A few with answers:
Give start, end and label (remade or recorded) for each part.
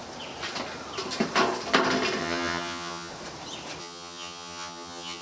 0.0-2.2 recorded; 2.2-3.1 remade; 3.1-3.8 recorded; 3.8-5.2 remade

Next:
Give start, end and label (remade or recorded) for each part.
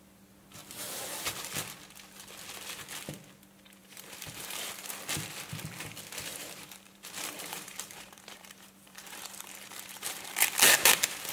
0.0-3.8 recorded; 3.8-4.9 remade; 4.9-6.4 recorded; 6.4-10.3 remade; 10.3-11.3 recorded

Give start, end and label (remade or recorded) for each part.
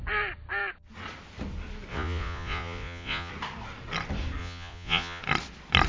0.0-1.9 recorded; 1.9-3.3 remade; 3.3-4.4 recorded; 4.4-5.2 remade; 5.2-5.9 recorded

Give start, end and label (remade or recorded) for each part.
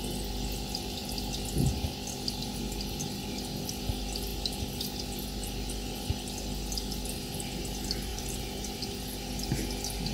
0.0-8.1 recorded; 8.1-8.8 remade; 8.8-10.1 recorded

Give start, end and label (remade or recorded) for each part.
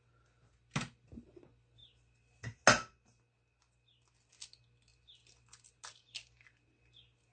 0.0-7.3 recorded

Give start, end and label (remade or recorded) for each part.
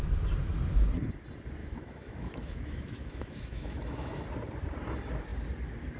0.0-1.6 recorded; 1.6-4.2 remade; 4.2-6.0 recorded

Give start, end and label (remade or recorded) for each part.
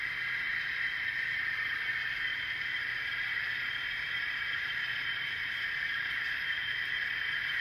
0.0-0.5 recorded; 0.5-1.9 remade; 1.9-2.3 recorded; 2.3-6.7 remade; 6.7-7.6 recorded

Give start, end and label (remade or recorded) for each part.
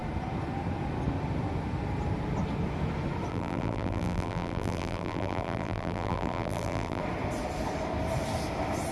0.0-3.3 recorded; 3.3-7.0 remade; 7.0-8.9 recorded